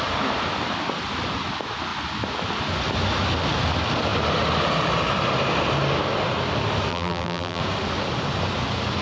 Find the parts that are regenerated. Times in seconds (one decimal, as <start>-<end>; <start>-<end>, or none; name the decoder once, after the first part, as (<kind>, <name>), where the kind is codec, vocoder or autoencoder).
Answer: 6.9-7.6 (vocoder, BigVGAN v2)